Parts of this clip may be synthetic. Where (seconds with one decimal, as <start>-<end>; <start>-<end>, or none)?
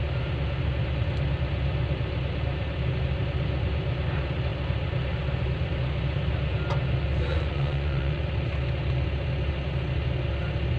7.3-8.2